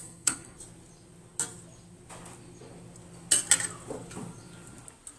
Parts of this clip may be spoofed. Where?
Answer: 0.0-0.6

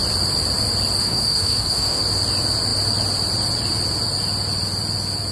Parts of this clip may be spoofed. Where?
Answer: 1.0-2.0

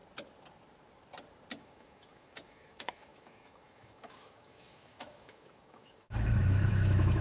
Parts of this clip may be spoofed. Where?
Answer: 1.6-7.2

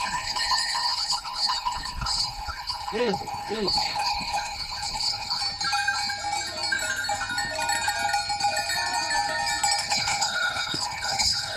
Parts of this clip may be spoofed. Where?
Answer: 0.0-5.4; 9.8-11.6